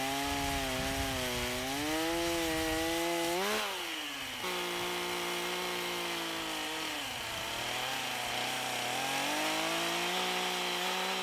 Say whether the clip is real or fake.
real